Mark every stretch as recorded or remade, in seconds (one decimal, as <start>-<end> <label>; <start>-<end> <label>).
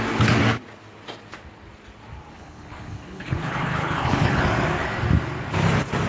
0.0-2.3 recorded; 2.3-4.4 remade; 4.4-6.1 recorded